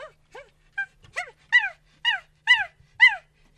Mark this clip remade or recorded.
recorded